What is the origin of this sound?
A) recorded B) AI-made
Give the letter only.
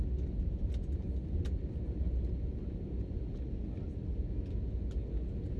A